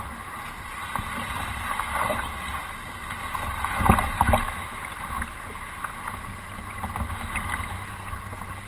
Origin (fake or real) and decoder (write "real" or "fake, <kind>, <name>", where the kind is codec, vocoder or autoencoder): real